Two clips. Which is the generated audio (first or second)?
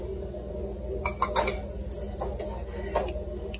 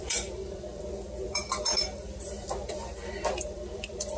second